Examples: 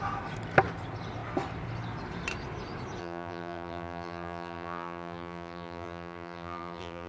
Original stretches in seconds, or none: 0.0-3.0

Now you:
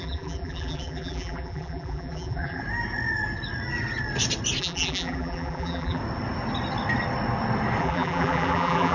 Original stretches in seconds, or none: 2.6-4.6; 6.0-7.8

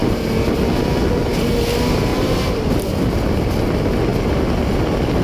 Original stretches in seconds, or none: 0.0-2.1; 3.1-5.2

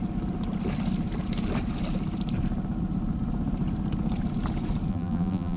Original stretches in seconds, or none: 0.0-4.9

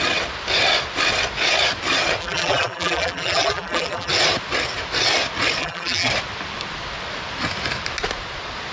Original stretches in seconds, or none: 0.0-2.2; 4.1-5.6; 6.1-8.7

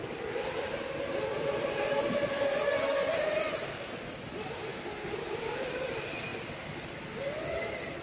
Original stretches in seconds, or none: 1.5-4.7; 5.7-8.0

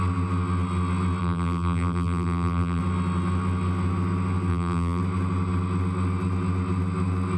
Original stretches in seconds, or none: 0.0-1.2; 2.8-4.5; 5.0-7.4

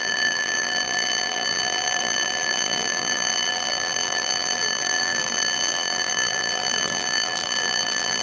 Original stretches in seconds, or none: none